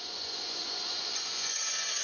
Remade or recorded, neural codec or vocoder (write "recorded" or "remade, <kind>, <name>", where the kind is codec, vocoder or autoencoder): remade, vocoder, Vocos